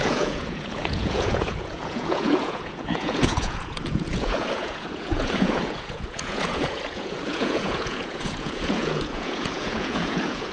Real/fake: fake